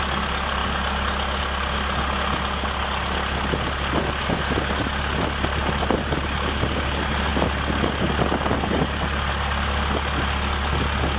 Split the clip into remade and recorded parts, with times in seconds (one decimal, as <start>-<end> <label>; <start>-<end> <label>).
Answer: 0.0-11.2 recorded